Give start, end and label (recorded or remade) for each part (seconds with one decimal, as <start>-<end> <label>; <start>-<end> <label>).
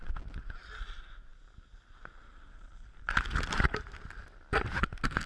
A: 0.0-0.6 remade; 0.6-1.3 recorded; 1.3-2.4 remade; 2.4-4.2 recorded; 4.2-4.8 remade; 4.8-5.3 recorded